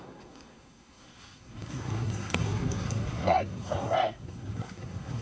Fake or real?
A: fake